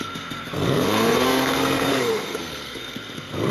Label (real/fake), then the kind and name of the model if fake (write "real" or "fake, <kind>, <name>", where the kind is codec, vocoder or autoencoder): fake, codec, SNAC